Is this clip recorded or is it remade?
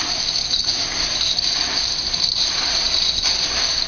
remade